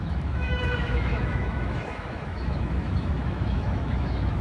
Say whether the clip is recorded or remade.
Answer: remade